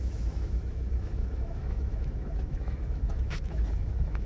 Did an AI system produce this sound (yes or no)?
yes